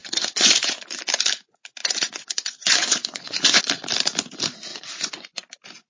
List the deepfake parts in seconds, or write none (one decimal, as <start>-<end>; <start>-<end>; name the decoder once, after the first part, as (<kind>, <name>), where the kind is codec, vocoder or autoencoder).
0.0-0.8 (vocoder, Vocos); 1.8-3.6; 4.7-5.5